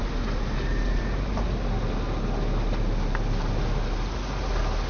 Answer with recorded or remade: recorded